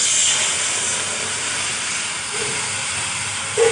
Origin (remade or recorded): recorded